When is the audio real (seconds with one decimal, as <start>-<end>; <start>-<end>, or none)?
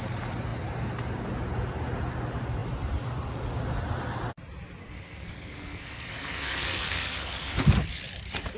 0.0-4.8; 7.7-8.6